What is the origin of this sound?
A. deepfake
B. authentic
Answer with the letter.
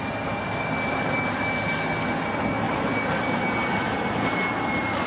B